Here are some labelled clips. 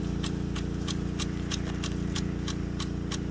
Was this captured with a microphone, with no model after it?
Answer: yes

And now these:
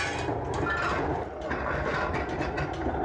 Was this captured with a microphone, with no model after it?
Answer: yes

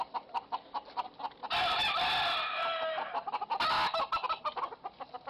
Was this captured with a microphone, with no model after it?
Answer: yes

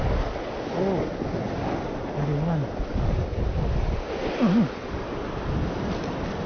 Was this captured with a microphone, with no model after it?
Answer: yes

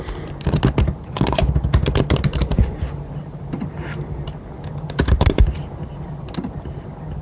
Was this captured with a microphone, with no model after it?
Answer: yes